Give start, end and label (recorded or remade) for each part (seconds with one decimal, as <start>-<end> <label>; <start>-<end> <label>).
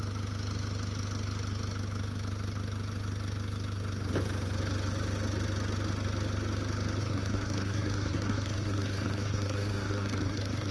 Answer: 0.0-7.0 recorded; 7.0-10.7 remade